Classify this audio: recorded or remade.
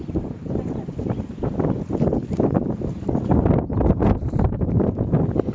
recorded